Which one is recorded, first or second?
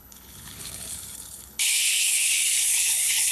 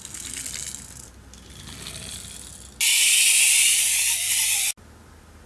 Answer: second